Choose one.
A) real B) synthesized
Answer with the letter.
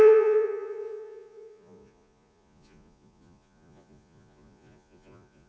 B